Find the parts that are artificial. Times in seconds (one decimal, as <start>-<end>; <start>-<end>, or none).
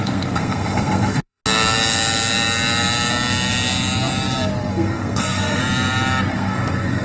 0.0-1.4; 4.7-5.6; 6.3-7.0